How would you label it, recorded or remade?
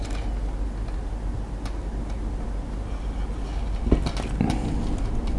recorded